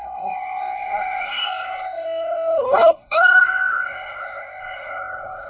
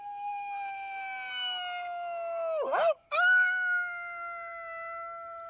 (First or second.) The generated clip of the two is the first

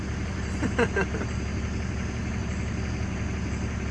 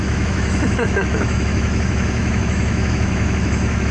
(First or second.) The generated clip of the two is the second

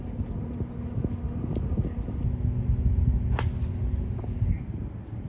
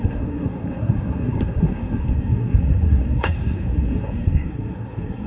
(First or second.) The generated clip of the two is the second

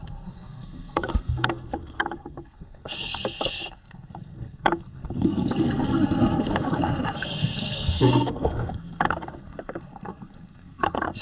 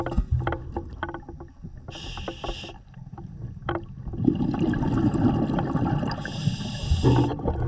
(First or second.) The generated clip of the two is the first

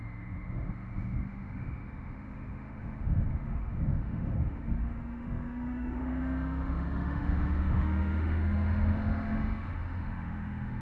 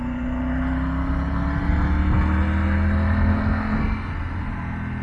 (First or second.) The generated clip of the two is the first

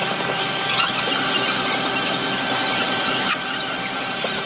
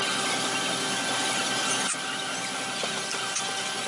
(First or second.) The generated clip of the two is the first